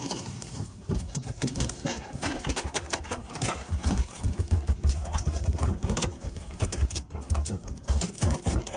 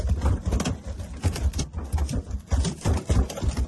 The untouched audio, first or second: second